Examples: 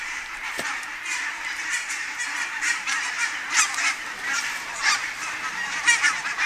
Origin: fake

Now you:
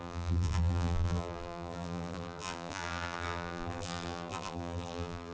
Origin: fake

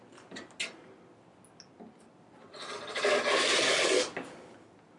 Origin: real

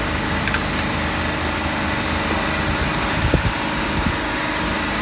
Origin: real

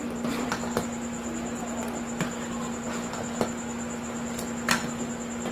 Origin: real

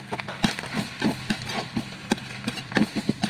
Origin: real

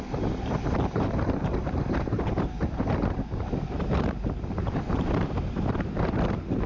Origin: fake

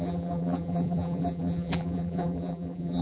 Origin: fake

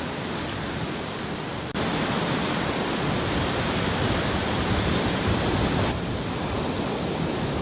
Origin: fake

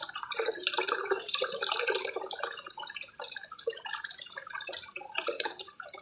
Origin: fake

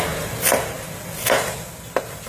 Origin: fake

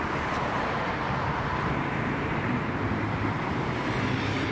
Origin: fake